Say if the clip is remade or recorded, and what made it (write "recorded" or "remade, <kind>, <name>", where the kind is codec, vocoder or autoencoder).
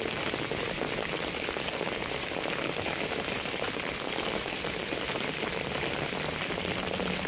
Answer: recorded